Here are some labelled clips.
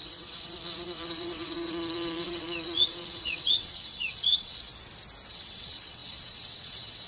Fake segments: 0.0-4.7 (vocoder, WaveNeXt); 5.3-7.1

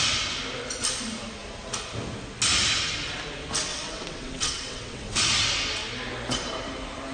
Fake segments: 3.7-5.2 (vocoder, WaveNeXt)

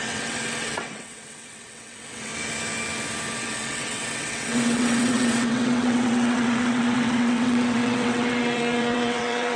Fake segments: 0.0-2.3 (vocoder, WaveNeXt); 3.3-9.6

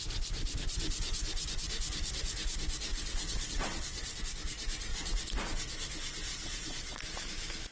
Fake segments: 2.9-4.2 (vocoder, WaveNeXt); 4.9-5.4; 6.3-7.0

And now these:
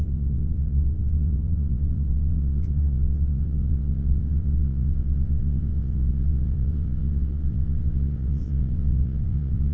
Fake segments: 0.0-9.7 (vocoder, WaveNeXt)